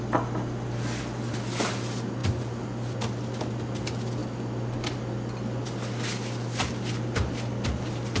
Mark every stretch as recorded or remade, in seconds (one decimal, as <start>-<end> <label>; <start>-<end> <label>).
0.0-8.2 recorded